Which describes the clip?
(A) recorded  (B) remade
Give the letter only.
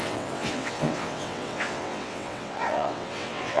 B